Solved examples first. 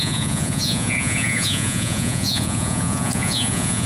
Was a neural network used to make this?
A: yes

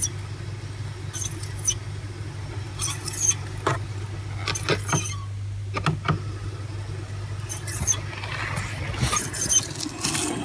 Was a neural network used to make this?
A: no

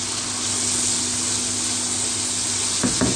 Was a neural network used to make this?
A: no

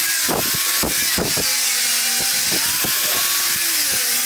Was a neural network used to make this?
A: no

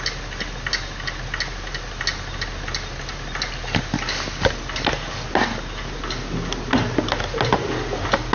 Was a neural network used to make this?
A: no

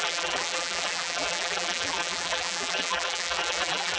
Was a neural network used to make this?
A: yes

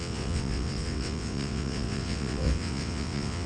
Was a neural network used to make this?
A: yes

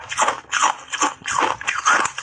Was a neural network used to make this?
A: no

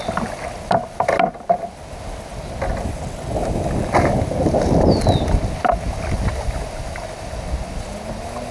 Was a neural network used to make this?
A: no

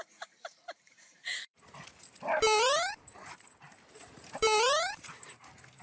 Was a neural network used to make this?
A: yes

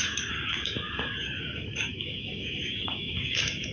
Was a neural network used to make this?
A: yes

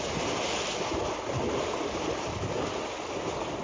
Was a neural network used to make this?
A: no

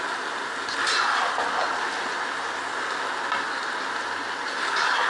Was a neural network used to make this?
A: no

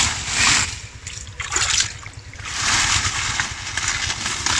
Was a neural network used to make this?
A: no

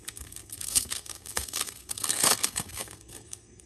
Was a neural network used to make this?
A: yes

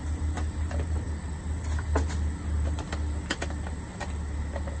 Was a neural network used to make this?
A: no